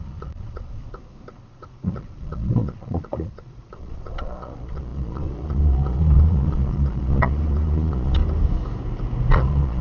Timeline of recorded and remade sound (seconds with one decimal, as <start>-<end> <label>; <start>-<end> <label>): 0.0-0.8 remade; 0.8-1.3 recorded; 1.3-8.2 remade; 8.2-9.3 recorded; 9.3-9.8 remade